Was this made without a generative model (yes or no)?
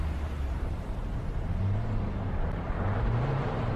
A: no